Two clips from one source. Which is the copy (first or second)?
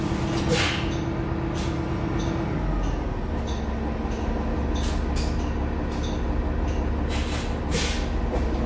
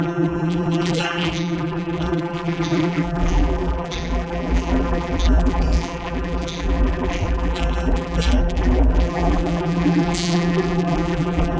second